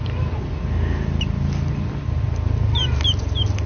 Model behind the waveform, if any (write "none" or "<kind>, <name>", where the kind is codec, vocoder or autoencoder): none